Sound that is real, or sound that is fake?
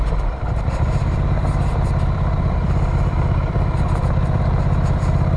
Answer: fake